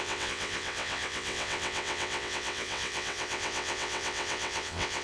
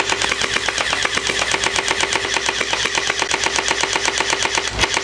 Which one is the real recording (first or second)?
second